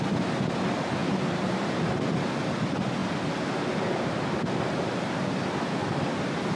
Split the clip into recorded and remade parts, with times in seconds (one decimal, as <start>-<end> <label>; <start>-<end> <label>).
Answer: 0.0-1.0 recorded; 1.0-1.9 remade; 1.9-6.6 recorded